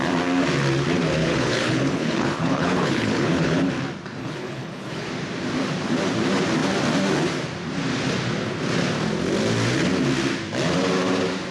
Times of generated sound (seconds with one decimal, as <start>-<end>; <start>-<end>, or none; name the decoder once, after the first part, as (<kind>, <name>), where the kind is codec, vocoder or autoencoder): 1.2-3.7 (codec, HILCodec); 4.2-5.1